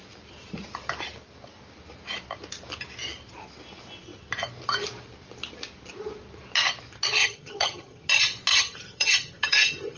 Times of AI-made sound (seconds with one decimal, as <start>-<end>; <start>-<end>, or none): 7.2-8.1; 8.5-10.0